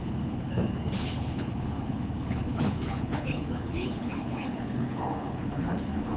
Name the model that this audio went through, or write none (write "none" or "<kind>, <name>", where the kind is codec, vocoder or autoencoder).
codec, HILCodec